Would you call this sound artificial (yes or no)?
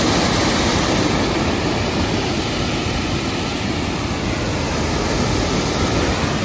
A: no